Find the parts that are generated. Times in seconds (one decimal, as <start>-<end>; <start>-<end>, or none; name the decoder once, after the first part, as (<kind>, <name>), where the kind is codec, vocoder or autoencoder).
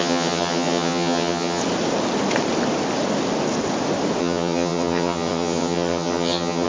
0.0-1.6 (vocoder, HiFi-GAN); 4.2-6.7